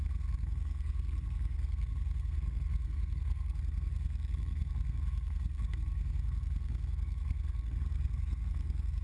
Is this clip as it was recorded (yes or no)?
no